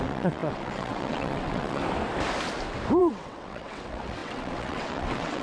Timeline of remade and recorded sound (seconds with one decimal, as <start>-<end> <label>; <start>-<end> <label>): 0.0-1.8 remade; 1.8-3.0 recorded; 3.0-5.4 remade